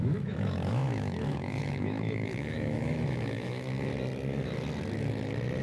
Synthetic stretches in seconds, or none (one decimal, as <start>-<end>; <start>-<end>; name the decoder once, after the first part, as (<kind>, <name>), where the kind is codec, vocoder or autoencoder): 0.0-3.9 (autoencoder, DAC-VAE)

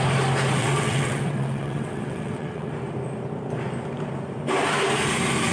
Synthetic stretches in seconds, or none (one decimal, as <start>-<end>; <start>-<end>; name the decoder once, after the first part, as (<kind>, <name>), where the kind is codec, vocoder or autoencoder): 0.6-2.7 (vocoder, WaveNeXt)

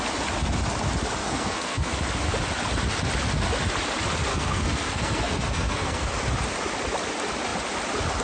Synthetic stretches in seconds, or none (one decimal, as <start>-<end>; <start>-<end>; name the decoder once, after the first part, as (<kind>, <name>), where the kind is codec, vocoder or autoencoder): 1.2-1.9 (codec, SNAC); 4.3-6.1

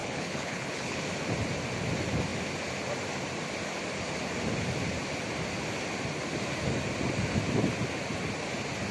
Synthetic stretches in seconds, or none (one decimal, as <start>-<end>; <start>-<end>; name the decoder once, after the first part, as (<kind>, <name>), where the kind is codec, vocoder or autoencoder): 0.0-1.0 (codec, HILCodec)

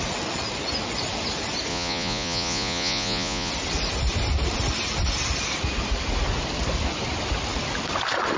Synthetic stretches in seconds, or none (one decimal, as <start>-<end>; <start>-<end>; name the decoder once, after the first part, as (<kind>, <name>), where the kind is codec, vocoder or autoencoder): 1.7-3.5 (vocoder, Vocos)

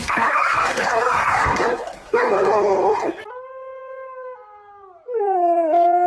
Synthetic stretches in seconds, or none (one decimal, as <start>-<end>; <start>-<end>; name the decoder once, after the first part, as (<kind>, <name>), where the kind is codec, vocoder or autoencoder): 0.0-3.2 (codec, SNAC)

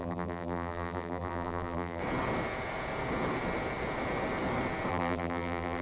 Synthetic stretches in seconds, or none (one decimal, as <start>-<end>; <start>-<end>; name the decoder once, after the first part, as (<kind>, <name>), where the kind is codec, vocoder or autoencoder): 0.0-2.0 (vocoder, BigVGAN v2); 4.9-5.8

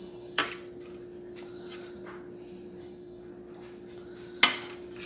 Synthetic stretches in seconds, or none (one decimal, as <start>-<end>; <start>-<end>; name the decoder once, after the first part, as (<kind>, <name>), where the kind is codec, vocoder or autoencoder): 0.0-0.4 (codec, DAC); 2.8-3.3